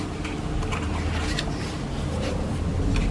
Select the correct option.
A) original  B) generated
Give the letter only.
A